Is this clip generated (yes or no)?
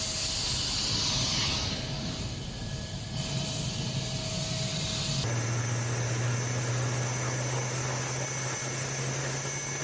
no